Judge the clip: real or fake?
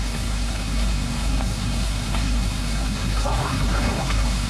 fake